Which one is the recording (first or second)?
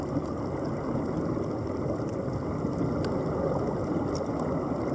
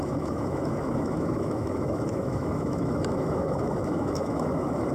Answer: first